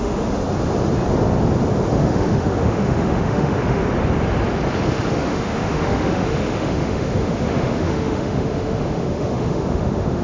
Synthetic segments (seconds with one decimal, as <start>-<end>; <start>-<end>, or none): 0.0-0.4; 2.0-3.8; 5.1-10.2